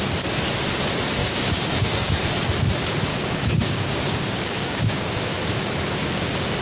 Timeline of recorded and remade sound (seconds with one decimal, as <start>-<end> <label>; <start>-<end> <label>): 0.0-1.2 recorded; 1.2-2.1 remade; 2.1-3.1 recorded; 3.1-5.2 remade; 5.2-6.6 recorded